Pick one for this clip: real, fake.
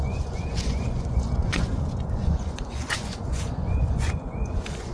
fake